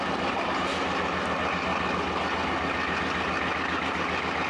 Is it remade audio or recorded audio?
recorded